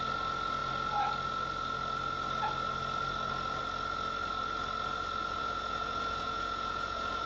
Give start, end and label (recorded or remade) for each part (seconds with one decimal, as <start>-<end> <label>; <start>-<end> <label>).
0.0-5.4 recorded; 5.4-7.3 remade